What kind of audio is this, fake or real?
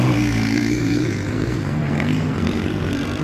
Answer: fake